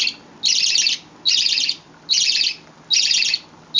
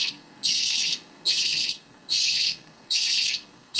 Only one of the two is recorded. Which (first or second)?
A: first